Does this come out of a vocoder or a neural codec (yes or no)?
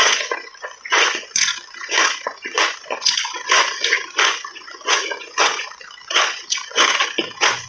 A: yes